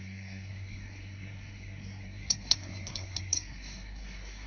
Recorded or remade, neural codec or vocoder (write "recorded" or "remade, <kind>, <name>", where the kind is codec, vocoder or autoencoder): remade, codec, SNAC